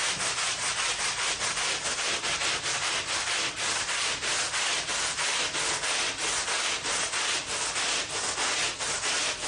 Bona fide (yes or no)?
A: yes